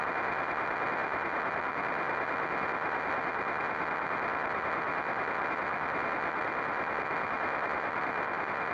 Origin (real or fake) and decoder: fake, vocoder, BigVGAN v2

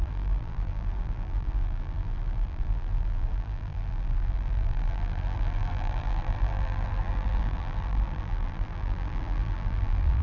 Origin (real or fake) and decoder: fake, vocoder, BigVGAN v2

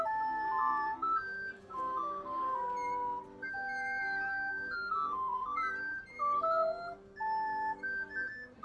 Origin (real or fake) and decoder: real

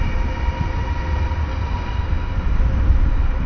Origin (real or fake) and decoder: real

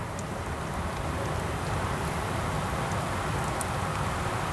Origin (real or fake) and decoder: real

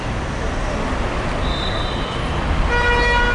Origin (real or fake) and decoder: real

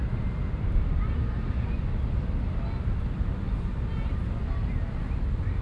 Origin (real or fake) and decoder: real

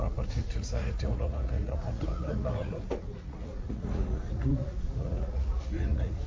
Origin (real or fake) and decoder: fake, vocoder, Vocos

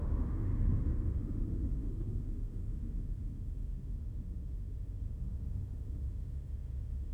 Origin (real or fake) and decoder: fake, autoencoder, DAC-VAE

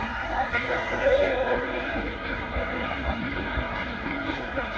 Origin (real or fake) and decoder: fake, codec, SNAC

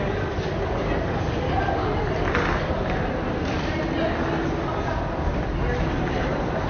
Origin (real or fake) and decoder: real